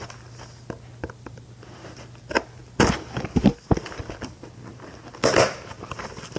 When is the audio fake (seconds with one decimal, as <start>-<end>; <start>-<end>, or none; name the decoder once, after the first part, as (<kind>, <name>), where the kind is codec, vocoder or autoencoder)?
none